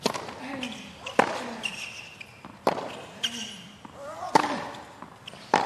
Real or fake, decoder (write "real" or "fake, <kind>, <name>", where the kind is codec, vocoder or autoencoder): real